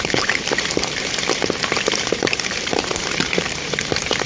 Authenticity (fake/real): fake